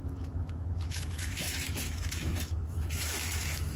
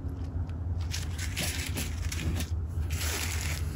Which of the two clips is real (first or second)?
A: second